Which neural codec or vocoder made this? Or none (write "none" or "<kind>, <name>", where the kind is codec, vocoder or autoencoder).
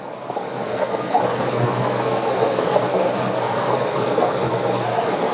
codec, SNAC